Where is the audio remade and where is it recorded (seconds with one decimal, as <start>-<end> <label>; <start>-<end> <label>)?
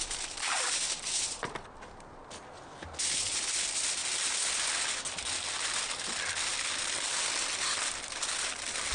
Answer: 0.0-8.9 recorded